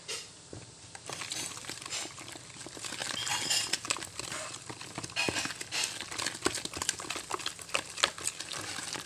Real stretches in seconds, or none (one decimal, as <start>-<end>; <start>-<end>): 0.0-9.1